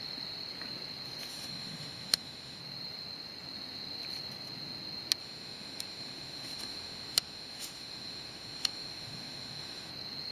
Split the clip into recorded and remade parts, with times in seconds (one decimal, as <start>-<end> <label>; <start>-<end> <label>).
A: 0.0-1.3 recorded; 1.3-2.6 remade; 2.6-5.2 recorded; 5.2-9.9 remade; 9.9-10.3 recorded